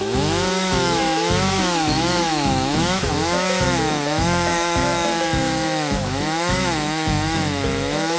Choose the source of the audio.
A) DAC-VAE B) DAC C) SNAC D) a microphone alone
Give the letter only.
A